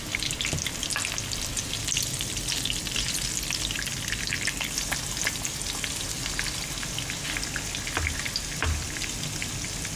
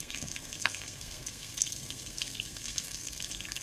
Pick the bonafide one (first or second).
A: first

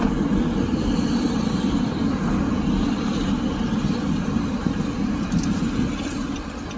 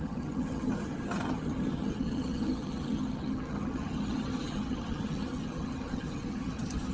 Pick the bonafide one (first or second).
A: first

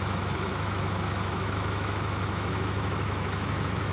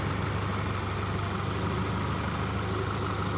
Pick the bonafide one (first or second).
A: second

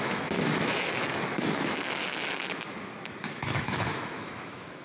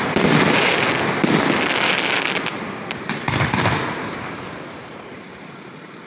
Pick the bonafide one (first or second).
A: second